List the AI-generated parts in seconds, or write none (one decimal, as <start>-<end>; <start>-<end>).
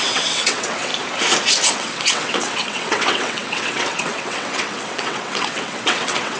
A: 0.0-0.9; 1.7-6.4